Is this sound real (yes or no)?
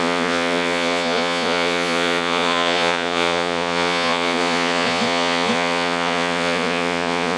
no